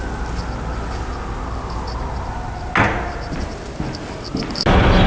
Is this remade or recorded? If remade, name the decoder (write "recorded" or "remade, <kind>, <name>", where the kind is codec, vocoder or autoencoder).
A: recorded